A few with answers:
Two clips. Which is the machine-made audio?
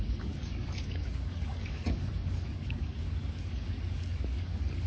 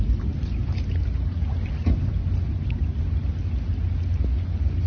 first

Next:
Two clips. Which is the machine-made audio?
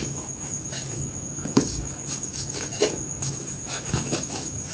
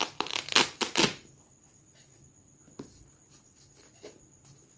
first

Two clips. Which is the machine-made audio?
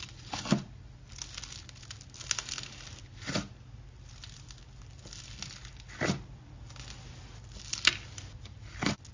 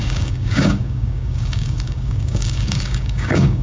second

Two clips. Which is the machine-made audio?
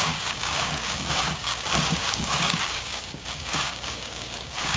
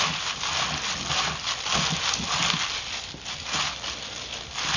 first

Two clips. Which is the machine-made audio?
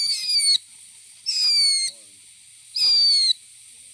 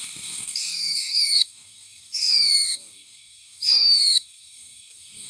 second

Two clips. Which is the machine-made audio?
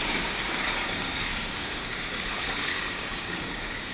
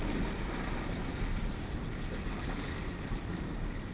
first